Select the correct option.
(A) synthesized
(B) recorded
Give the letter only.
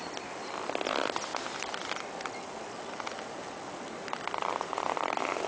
B